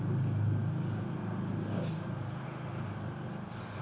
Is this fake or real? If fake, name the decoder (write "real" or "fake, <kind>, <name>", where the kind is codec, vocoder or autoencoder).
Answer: real